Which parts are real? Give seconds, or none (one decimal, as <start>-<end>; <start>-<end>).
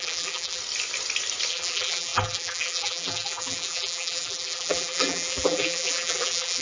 0.6-1.5